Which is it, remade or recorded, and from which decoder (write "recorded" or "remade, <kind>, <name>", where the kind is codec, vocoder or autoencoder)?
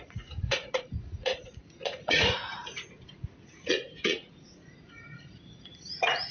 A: remade, vocoder, Vocos